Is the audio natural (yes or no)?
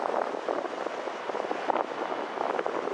yes